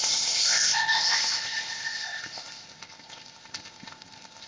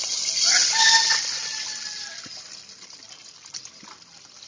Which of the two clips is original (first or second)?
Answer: second